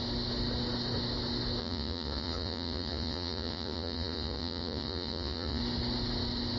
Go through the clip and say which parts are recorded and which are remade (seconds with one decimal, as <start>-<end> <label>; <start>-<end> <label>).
0.0-1.6 recorded; 1.6-5.6 remade; 5.6-6.6 recorded